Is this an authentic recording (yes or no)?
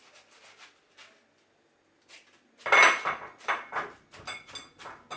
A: yes